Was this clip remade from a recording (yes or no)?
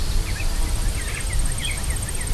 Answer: no